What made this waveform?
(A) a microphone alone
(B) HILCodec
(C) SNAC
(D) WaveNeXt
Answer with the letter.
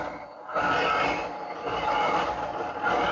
A